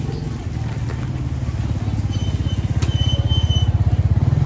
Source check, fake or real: real